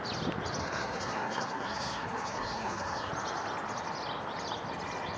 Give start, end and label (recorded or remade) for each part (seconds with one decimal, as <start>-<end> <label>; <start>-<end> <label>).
0.0-0.6 recorded; 0.6-3.1 remade; 3.1-5.2 recorded